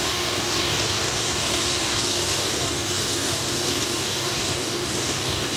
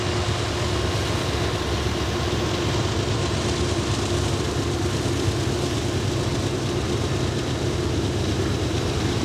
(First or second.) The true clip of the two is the second